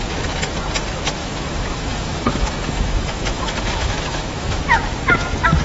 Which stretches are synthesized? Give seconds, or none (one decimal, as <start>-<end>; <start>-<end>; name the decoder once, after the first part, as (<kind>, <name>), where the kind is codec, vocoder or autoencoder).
1.2-4.6 (autoencoder, DAC-VAE)